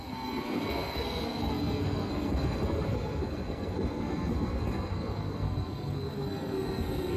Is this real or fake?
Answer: fake